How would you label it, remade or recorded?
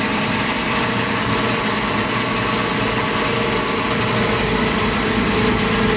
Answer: recorded